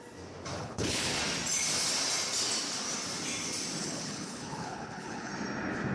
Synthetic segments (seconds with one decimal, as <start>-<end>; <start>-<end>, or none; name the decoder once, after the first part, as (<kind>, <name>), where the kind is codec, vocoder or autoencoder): 0.6-1.2 (codec, HILCodec); 3.8-5.3